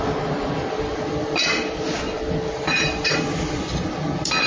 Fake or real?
real